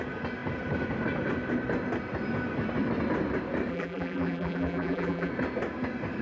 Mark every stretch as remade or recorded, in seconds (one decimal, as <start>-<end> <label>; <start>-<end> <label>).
0.0-3.7 recorded; 3.7-5.3 remade; 5.3-6.2 recorded